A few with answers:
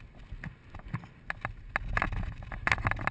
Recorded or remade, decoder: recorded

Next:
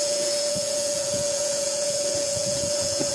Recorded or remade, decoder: remade, vocoder, Vocos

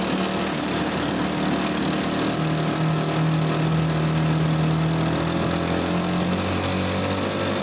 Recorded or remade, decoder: recorded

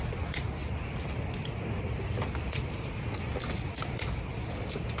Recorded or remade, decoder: recorded